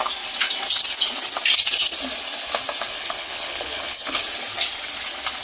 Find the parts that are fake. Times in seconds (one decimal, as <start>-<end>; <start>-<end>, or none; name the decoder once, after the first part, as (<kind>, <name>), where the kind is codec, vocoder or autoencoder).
2.9-4.2 (codec, HILCodec)